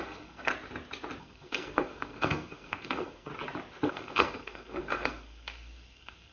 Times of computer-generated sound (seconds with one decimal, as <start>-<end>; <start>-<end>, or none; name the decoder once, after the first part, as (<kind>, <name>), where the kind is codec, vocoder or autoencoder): 0.0-0.5 (codec, SNAC); 1.2-3.3; 3.9-6.3